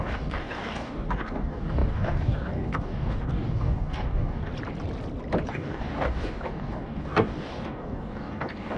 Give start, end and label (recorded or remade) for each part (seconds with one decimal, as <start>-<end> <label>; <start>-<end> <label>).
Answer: 0.0-4.5 remade; 4.5-5.5 recorded; 5.5-8.8 remade